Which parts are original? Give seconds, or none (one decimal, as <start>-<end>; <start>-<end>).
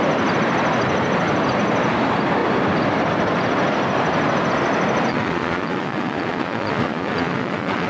0.0-5.1